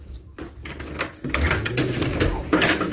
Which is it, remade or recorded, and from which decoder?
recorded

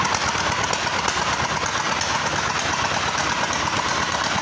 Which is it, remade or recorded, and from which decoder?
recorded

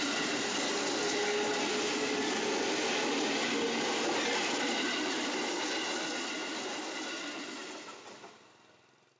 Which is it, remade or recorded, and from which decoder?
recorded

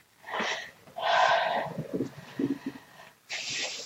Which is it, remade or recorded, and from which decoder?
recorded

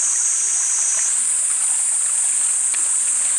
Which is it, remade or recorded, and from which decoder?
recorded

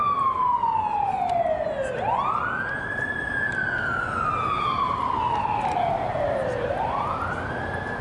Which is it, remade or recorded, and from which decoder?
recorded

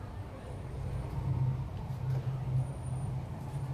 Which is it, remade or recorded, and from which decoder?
recorded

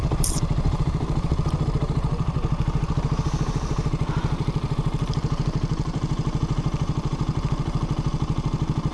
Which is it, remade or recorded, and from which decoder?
remade, vocoder, BigVGAN v2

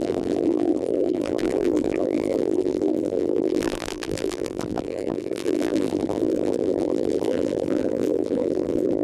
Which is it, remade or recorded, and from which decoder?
remade, vocoder, BigVGAN v2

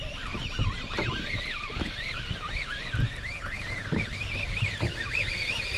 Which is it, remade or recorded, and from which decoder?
remade, vocoder, BigVGAN v2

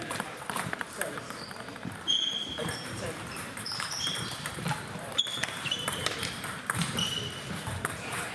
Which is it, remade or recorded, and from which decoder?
remade, vocoder, BigVGAN v2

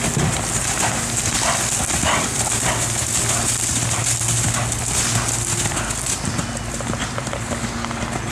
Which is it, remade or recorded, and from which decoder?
recorded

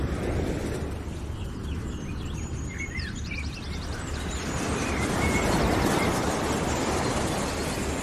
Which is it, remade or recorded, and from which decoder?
remade, vocoder, BigVGAN v2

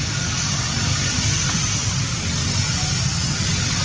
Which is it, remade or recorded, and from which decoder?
recorded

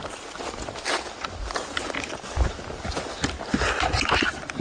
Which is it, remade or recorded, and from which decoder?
recorded